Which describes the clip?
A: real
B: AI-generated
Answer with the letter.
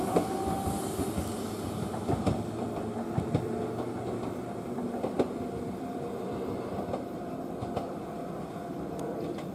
B